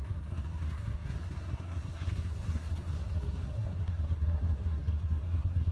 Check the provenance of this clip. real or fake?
fake